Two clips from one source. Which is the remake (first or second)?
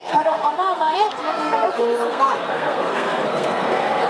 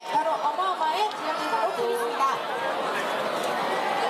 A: first